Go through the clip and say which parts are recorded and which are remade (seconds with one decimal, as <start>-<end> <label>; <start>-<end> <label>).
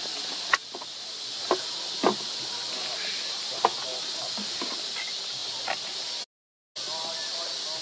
0.0-7.8 recorded